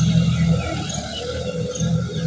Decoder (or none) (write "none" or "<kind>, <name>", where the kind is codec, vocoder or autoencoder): none